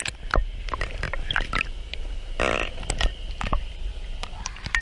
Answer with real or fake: real